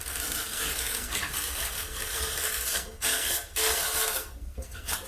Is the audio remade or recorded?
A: remade